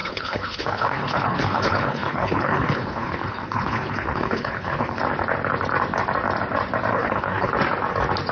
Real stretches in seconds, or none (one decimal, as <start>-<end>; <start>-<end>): 5.0-6.9; 7.5-8.3